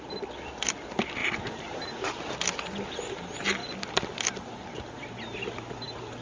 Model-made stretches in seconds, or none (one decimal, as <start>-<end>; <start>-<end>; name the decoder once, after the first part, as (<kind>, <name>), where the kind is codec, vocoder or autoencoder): 3.6-5.2 (vocoder, BigVGAN v2)